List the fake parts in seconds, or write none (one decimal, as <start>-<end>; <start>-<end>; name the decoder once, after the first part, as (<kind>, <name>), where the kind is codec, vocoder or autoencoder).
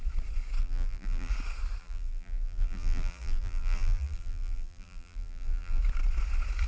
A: 0.6-1.3 (vocoder, BigVGAN v2); 1.8-5.8